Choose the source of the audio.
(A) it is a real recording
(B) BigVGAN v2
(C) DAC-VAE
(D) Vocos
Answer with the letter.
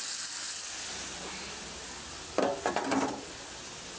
A